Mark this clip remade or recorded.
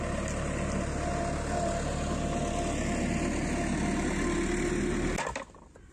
recorded